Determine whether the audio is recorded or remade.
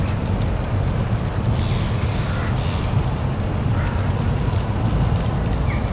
recorded